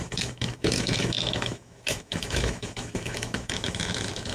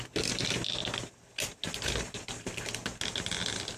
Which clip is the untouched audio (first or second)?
second